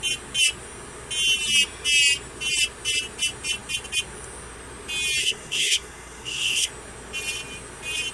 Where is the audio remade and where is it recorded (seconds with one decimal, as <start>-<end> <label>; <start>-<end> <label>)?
0.0-5.2 recorded; 5.2-6.7 remade; 6.7-8.1 recorded